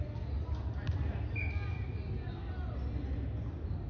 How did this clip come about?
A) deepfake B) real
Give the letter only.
B